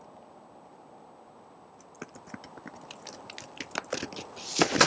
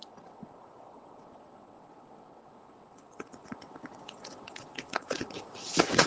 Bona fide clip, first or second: first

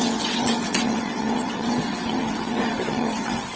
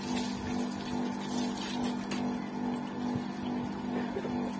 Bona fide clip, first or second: second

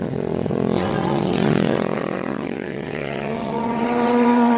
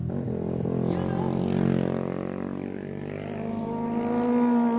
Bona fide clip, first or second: second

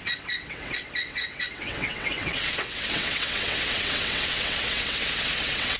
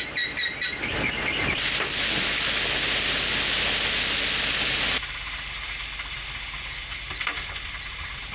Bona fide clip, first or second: second